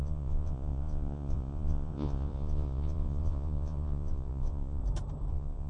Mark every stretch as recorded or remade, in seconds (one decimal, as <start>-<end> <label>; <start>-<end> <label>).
0.0-4.8 remade; 4.8-5.3 recorded; 5.3-5.7 remade